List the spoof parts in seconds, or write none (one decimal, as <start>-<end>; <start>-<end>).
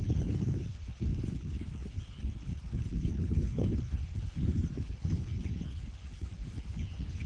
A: 0.0-7.3